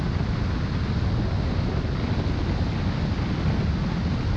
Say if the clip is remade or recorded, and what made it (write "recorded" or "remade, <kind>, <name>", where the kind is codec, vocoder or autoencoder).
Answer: recorded